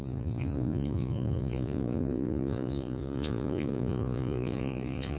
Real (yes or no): no